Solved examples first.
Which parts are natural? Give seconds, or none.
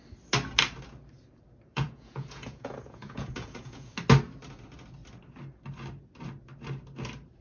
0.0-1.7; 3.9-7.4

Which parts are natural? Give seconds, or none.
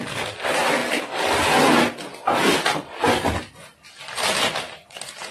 0.0-5.3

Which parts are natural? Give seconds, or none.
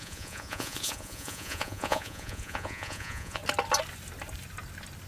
3.4-5.1